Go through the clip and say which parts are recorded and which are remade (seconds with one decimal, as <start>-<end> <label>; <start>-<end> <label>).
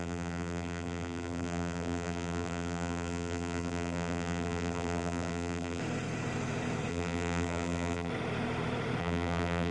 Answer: 0.0-5.8 remade; 5.8-6.9 recorded; 6.9-8.1 remade; 8.1-9.0 recorded; 9.0-9.7 remade